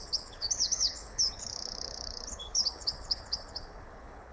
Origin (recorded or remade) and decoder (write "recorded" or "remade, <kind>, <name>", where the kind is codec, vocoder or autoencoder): remade, codec, HILCodec